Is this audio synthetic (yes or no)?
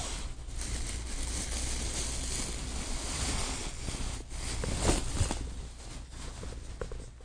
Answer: no